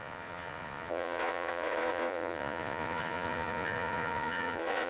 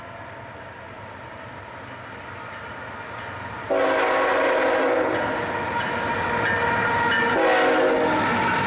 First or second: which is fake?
first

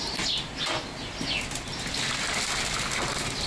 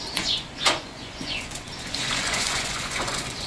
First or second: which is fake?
second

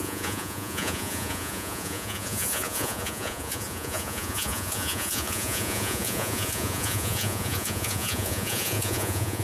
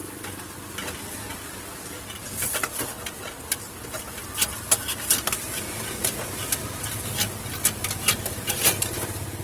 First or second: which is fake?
first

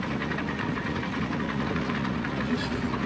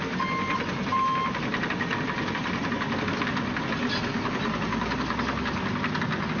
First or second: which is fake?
first